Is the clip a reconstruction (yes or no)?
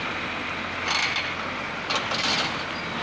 no